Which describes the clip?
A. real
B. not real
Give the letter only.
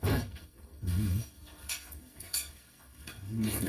B